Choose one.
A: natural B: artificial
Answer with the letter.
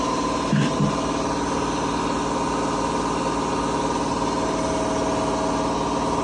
A